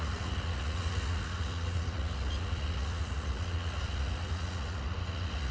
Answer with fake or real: fake